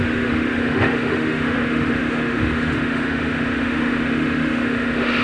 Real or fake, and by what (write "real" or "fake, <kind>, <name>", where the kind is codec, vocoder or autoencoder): fake, autoencoder, DAC-VAE